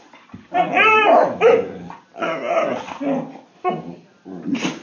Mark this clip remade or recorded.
recorded